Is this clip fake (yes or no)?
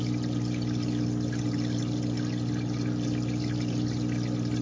no